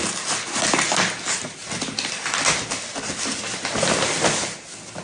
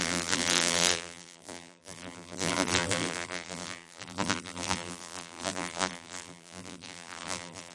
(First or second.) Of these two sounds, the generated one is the second